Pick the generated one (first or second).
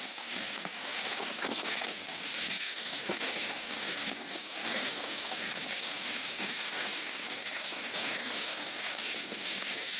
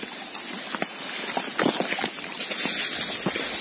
first